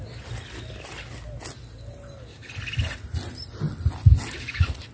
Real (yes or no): yes